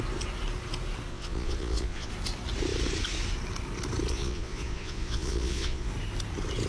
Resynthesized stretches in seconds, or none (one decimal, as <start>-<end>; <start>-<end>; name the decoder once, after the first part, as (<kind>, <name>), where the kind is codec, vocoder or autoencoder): 1.1-2.1 (vocoder, Vocos); 4.1-5.9

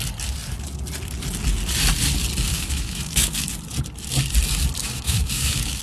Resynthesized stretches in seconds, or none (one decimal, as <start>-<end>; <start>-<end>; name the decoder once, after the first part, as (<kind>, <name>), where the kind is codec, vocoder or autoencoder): 2.5-3.5 (autoencoder, DAC-VAE); 4.8-5.8

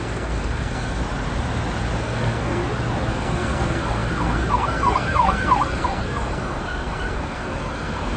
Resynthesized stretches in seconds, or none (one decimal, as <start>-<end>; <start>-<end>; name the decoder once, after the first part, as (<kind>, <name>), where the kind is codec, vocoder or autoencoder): 0.0-1.0 (codec, SNAC); 2.0-2.6; 3.1-8.2

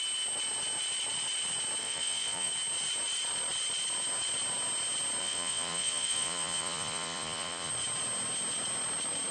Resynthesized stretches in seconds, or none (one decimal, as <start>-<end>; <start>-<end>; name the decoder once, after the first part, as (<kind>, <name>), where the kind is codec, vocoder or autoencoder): 1.8-2.5 (vocoder, Vocos); 5.2-7.7

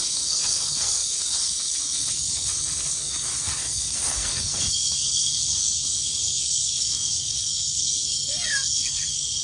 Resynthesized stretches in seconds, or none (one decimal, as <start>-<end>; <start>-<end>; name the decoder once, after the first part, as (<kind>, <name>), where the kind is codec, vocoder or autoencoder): 0.0-9.4 (codec, SNAC)

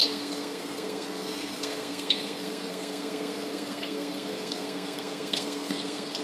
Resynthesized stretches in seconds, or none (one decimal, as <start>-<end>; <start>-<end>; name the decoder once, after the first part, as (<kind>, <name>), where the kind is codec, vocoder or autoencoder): 0.0-6.2 (codec, SNAC)

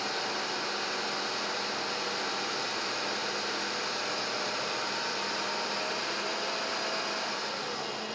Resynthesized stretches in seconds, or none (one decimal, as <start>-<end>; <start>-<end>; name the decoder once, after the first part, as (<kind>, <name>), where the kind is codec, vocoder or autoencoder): none